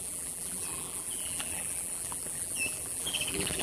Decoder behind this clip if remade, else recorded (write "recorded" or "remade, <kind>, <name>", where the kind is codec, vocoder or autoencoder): remade, vocoder, BigVGAN v2